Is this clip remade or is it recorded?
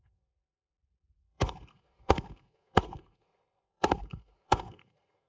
remade